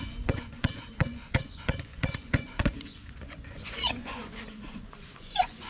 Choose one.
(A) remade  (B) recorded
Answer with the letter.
A